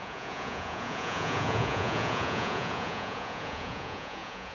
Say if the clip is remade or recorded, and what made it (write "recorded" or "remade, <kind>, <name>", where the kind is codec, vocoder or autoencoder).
remade, vocoder, Vocos